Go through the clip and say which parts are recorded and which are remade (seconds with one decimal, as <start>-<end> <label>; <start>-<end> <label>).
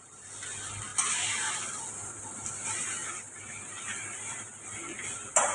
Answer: 0.0-5.5 recorded